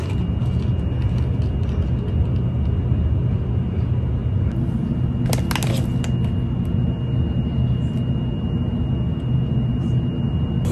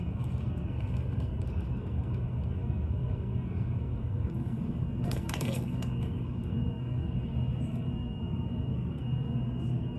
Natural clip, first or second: first